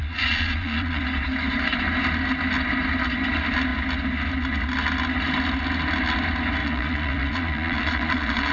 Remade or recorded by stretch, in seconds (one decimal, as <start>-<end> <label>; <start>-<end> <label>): 0.0-1.0 remade; 1.0-6.6 recorded; 6.6-8.5 remade